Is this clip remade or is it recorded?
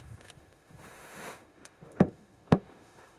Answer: remade